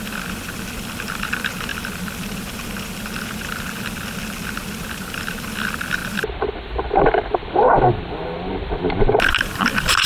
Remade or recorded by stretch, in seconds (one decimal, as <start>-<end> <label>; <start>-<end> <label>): 0.0-10.1 recorded